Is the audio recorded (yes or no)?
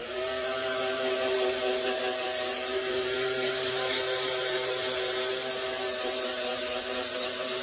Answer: no